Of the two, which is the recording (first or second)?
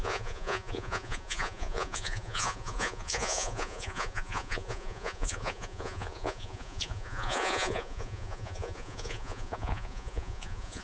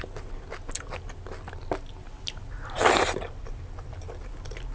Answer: second